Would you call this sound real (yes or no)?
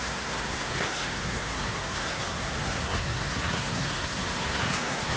no